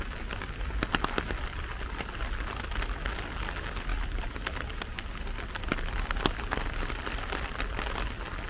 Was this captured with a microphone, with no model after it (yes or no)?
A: yes